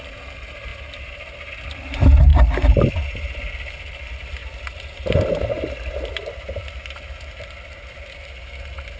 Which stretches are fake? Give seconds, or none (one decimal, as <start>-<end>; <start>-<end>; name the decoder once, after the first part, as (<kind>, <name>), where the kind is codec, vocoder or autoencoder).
none